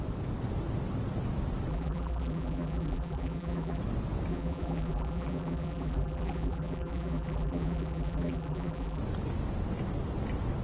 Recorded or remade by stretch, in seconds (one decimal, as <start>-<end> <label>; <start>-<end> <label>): 0.0-1.7 recorded; 1.7-3.8 remade; 3.8-4.3 recorded; 4.3-9.0 remade; 9.0-10.6 recorded